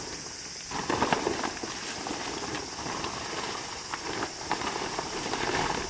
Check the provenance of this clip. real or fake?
real